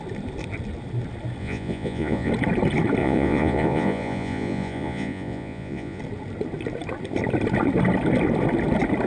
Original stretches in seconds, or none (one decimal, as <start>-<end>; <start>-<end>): 0.0-1.4; 2.3-3.0; 6.0-9.1